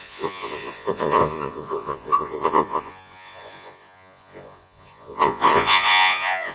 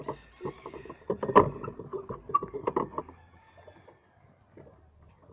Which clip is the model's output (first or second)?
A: first